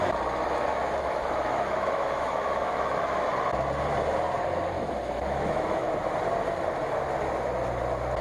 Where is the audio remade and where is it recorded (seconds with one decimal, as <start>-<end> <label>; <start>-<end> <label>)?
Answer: 0.0-0.7 recorded; 0.7-3.3 remade; 3.3-4.8 recorded; 4.8-5.9 remade; 5.9-8.2 recorded